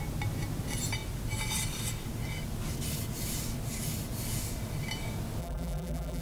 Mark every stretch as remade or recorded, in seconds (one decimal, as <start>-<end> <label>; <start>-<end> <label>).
0.0-5.4 recorded; 5.4-6.2 remade